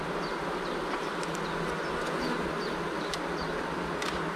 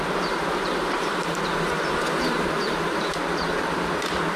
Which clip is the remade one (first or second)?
second